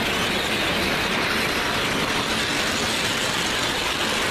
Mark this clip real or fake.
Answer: real